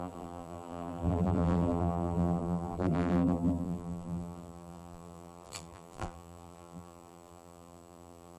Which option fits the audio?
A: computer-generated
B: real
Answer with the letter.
A